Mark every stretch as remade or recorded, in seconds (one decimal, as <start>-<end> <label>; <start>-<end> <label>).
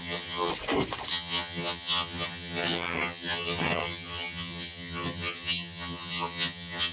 0.0-0.5 remade; 0.5-1.1 recorded; 1.1-6.9 remade